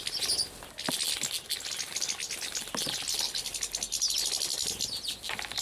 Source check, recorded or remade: recorded